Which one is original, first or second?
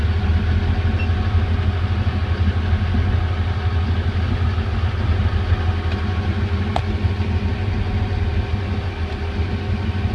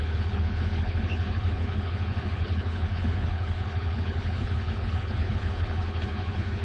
first